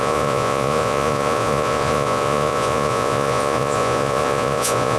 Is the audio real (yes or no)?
no